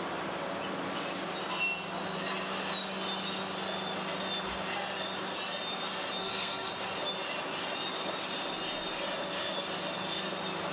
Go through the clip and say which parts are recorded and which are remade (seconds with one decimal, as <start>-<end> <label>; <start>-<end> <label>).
0.0-6.2 recorded; 6.2-6.7 remade; 6.7-10.7 recorded